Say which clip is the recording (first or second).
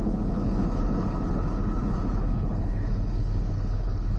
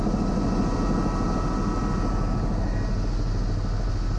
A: second